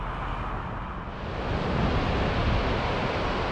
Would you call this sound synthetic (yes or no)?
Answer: no